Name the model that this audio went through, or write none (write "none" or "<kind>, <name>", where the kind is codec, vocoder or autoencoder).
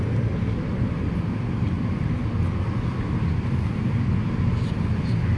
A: none